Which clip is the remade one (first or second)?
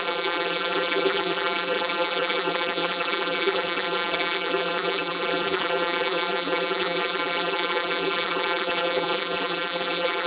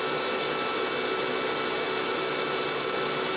first